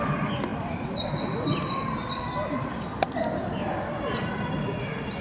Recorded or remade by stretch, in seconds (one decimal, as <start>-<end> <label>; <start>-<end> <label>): 0.0-5.2 recorded